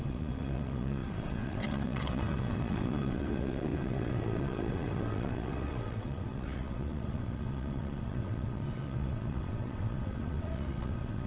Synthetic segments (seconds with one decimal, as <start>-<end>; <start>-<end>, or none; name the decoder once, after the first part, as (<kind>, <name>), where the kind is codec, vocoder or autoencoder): 0.0-11.3 (vocoder, WaveNeXt)